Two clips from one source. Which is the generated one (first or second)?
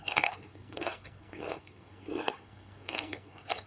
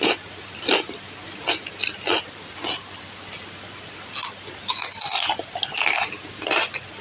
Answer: first